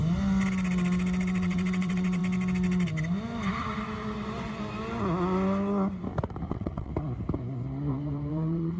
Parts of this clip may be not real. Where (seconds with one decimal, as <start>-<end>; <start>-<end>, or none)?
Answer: 1.2-2.2; 6.5-6.9; 8.3-8.8